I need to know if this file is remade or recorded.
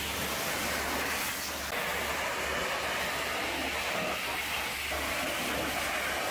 recorded